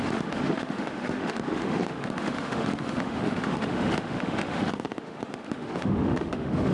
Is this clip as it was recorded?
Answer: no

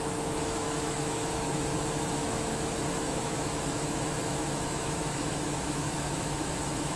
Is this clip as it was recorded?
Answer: no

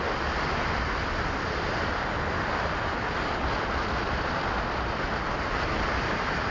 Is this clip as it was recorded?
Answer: yes